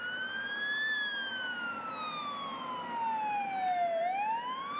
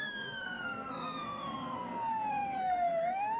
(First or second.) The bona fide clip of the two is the first